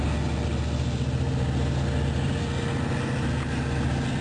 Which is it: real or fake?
real